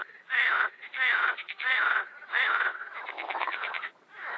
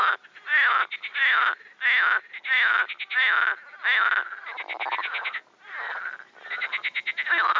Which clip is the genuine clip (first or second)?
second